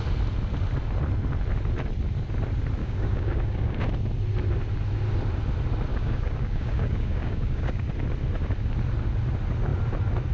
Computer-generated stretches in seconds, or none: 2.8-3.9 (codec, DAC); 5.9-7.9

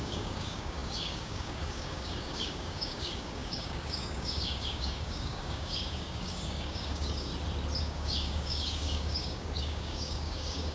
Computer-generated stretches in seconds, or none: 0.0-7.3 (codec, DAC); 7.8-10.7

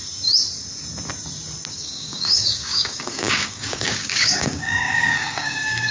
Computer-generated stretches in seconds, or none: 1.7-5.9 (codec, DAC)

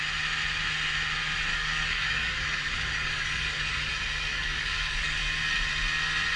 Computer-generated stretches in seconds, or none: 1.5-3.9 (codec, DAC); 4.3-5.2